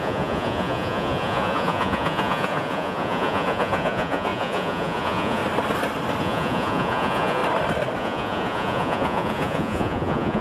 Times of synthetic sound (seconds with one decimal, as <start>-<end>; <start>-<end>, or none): 0.0-5.4; 6.2-7.4; 8.0-10.4